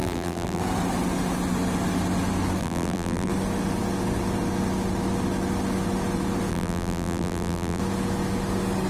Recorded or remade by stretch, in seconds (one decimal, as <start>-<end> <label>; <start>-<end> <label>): 0.0-0.6 remade; 0.6-2.6 recorded; 2.6-3.3 remade; 3.3-6.5 recorded; 6.5-7.8 remade; 7.8-8.9 recorded